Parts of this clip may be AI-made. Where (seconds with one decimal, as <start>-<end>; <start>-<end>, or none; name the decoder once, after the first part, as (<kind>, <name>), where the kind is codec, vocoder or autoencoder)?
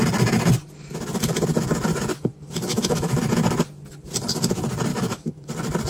2.7-3.2 (autoencoder, DAC-VAE); 4.9-5.5